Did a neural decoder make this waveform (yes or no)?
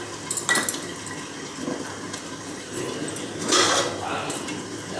no